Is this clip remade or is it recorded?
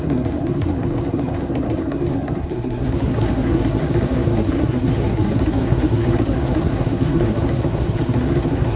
remade